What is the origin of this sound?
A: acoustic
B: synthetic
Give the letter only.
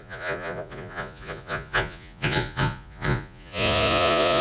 B